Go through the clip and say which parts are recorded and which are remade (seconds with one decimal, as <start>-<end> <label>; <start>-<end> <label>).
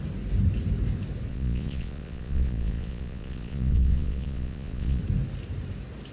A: 0.0-1.3 recorded; 1.3-5.0 remade; 5.0-6.1 recorded